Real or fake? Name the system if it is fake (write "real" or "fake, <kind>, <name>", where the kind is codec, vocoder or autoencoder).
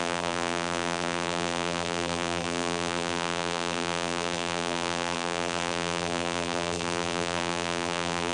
fake, vocoder, BigVGAN v2